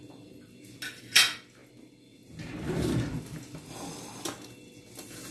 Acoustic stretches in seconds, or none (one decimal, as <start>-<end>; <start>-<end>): 0.0-5.3